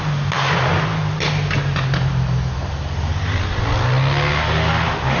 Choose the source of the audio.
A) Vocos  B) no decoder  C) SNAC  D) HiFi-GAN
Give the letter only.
B